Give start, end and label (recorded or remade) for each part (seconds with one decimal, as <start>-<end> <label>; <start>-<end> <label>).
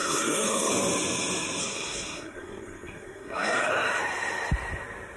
0.0-0.7 remade; 0.7-1.6 recorded; 1.6-3.7 remade; 3.7-5.2 recorded